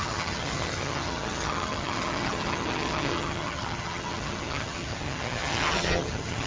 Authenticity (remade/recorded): remade